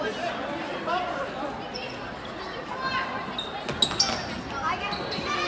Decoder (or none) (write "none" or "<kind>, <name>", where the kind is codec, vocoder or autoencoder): none